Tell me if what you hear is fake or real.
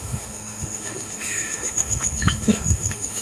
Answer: fake